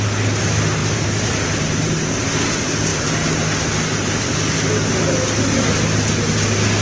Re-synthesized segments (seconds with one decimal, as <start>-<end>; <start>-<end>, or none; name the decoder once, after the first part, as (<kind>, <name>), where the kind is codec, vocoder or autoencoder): 0.8-2.0 (vocoder, BigVGAN v2)